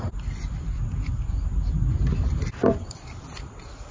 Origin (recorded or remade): recorded